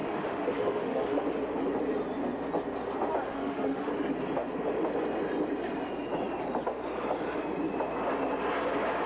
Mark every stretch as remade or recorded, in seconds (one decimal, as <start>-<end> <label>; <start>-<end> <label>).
0.0-1.2 remade; 1.2-3.3 recorded; 3.3-3.9 remade; 3.9-9.1 recorded